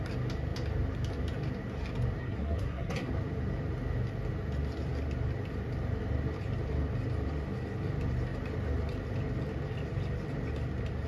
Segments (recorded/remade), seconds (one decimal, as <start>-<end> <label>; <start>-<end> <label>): 0.0-2.2 recorded; 2.2-3.1 remade; 3.1-11.1 recorded